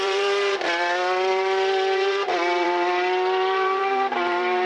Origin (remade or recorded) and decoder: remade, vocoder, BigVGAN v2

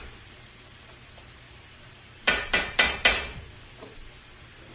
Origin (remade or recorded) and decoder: remade, vocoder, BigVGAN v2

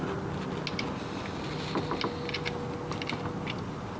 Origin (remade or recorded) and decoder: recorded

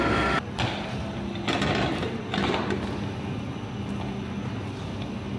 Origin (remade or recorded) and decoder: recorded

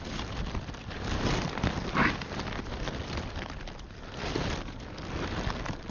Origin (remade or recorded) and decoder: recorded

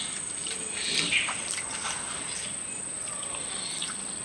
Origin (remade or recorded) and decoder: recorded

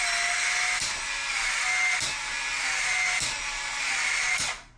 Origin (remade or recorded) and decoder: recorded